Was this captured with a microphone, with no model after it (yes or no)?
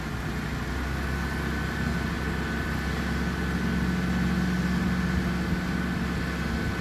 yes